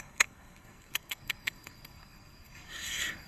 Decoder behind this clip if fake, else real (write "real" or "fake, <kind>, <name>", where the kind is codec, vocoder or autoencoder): fake, codec, SNAC